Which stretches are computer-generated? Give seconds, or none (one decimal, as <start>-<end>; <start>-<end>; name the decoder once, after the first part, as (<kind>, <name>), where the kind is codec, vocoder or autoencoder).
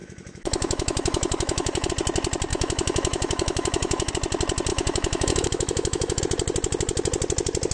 0.0-1.9 (autoencoder, DAC-VAE); 2.5-4.1; 4.7-6.2